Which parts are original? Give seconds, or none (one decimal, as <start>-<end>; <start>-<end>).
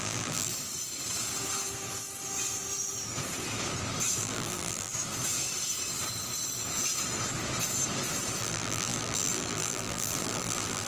0.5-4.2; 4.9-8.4